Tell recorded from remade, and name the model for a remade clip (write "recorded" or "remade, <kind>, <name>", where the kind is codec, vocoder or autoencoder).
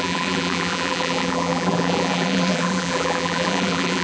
remade, vocoder, BigVGAN v2